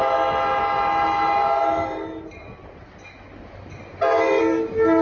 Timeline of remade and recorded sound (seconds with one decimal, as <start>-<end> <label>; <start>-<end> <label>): 0.0-5.0 recorded